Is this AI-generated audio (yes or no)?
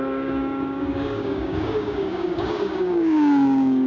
yes